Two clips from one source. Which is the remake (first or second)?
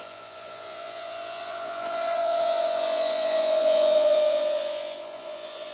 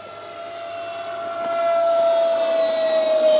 first